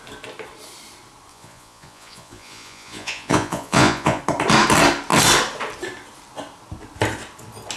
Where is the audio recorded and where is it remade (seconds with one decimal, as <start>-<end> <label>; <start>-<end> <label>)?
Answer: 0.0-1.3 recorded; 1.3-4.2 remade; 4.2-7.8 recorded